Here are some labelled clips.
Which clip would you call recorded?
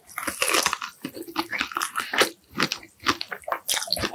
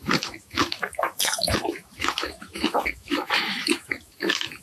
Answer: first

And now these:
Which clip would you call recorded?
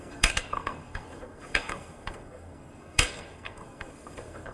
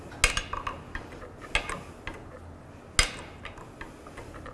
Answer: second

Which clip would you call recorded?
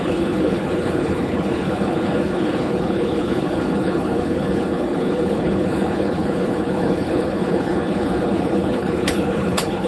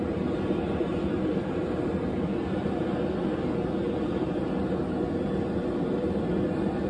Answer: second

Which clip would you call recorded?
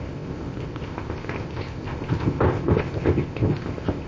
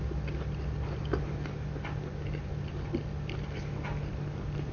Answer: second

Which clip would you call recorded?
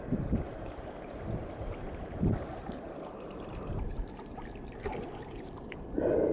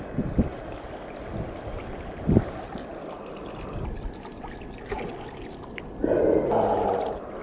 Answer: second